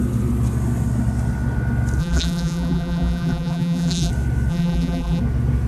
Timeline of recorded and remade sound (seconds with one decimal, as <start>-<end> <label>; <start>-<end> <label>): 0.0-2.0 recorded; 2.0-4.1 remade; 4.1-4.5 recorded; 4.5-5.2 remade; 5.2-5.7 recorded